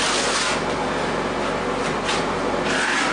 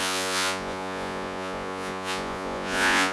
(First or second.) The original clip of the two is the first